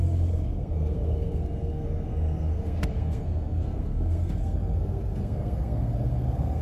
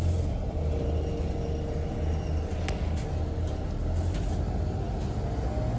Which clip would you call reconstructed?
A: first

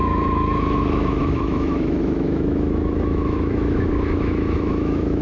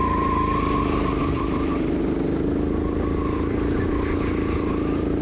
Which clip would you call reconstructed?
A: first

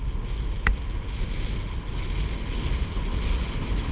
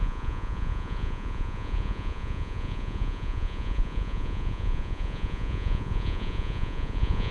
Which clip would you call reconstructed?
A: second